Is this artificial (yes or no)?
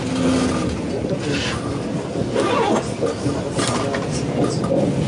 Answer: no